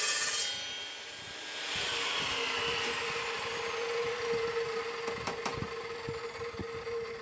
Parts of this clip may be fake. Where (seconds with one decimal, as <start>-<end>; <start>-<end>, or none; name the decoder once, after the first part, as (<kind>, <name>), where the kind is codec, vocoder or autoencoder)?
none